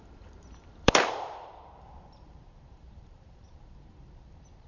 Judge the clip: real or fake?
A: fake